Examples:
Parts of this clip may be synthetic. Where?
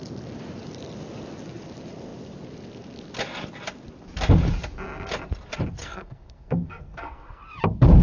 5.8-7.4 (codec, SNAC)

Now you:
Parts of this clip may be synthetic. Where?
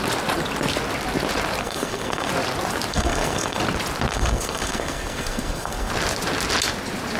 1.6-2.3 (codec, SNAC); 2.9-3.6; 4.1-5.9